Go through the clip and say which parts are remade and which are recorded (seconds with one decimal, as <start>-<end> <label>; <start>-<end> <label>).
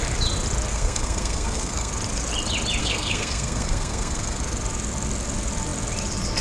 0.0-0.7 recorded; 0.7-1.9 remade; 1.9-2.8 recorded; 2.8-4.4 remade; 4.4-6.4 recorded